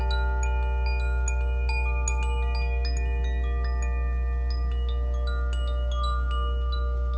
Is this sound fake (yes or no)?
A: no